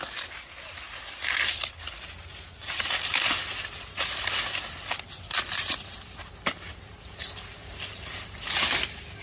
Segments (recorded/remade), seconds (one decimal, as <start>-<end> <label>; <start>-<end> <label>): 0.0-9.2 recorded

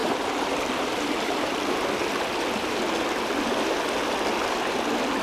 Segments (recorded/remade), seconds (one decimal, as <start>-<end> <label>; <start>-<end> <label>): 0.0-1.5 remade; 1.5-5.2 recorded

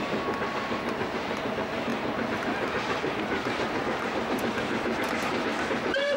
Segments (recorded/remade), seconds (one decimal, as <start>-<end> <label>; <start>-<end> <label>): 0.0-6.2 recorded

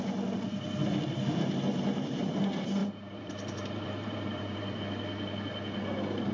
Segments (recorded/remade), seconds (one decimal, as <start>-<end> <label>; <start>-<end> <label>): 0.0-1.7 recorded; 1.7-2.3 remade; 2.3-2.8 recorded; 2.8-4.8 remade; 4.8-6.3 recorded